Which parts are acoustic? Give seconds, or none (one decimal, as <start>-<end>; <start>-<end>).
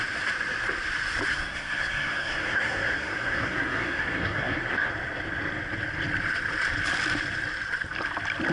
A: 0.0-1.3; 4.9-8.5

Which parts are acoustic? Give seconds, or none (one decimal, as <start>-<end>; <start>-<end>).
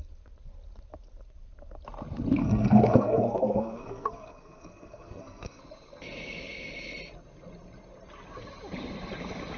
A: 0.0-2.4; 5.6-9.6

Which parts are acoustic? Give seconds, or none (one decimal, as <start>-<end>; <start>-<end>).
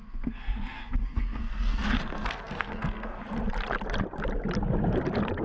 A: 3.2-5.4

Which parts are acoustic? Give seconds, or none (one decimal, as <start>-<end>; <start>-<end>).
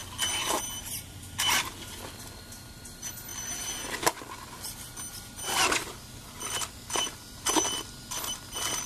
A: 0.0-8.9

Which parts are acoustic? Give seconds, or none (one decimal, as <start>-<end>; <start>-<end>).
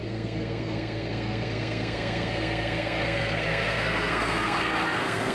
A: none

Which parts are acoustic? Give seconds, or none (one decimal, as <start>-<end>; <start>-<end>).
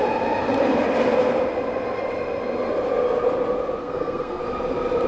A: 0.0-3.8; 4.4-5.1